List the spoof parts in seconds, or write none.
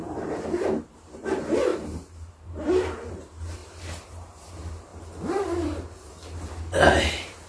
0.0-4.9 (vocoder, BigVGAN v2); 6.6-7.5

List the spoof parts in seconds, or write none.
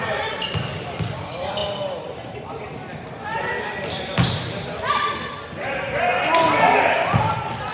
0.0-5.9 (vocoder, BigVGAN v2); 7.3-7.7